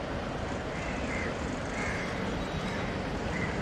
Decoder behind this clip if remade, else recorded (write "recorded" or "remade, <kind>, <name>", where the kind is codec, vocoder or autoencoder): remade, vocoder, BigVGAN v2